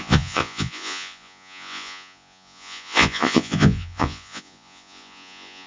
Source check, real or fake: fake